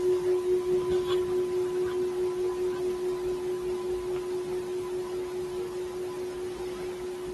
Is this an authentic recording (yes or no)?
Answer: yes